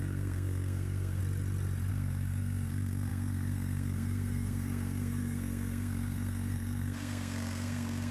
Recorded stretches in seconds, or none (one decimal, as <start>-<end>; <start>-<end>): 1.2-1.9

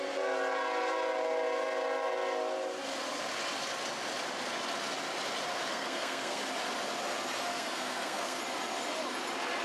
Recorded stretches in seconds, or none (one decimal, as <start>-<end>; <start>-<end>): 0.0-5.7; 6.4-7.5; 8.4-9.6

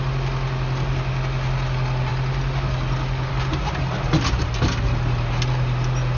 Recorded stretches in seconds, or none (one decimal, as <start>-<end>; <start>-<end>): 0.0-6.2

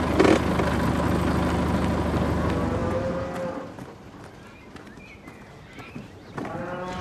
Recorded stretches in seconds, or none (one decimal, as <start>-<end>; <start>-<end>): 0.0-5.8; 6.6-7.0

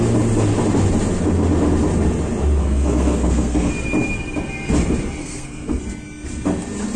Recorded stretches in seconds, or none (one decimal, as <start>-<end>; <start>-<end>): 0.0-2.6; 3.7-5.2; 5.8-7.0

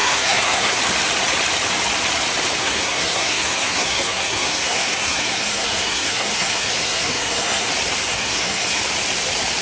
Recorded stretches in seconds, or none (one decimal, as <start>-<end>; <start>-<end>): 0.8-2.6; 7.7-8.1; 8.8-9.6